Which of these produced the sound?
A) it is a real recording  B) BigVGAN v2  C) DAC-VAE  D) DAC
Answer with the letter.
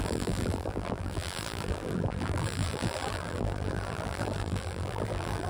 B